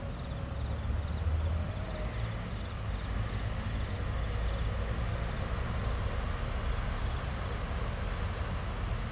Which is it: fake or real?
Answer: real